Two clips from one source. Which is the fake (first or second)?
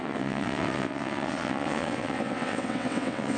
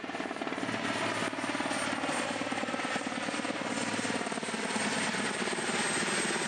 first